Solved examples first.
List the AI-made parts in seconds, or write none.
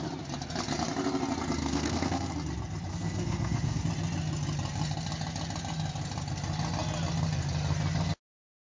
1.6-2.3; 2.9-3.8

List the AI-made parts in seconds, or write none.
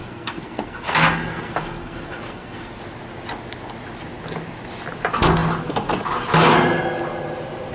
0.0-2.8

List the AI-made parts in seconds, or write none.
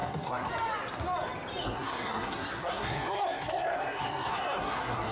0.0-0.5; 1.6-5.1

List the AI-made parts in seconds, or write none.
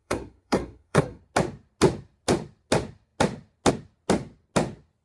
0.0-1.2